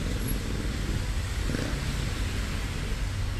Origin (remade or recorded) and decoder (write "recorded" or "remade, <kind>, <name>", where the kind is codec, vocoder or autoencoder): recorded